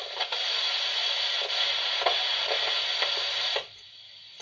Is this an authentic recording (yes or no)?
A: yes